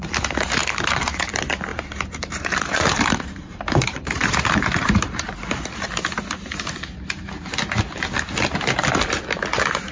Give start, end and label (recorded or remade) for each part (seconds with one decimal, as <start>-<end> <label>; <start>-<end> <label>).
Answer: 0.0-0.6 recorded; 0.6-1.1 remade; 1.1-1.7 recorded; 1.7-5.5 remade; 5.5-9.9 recorded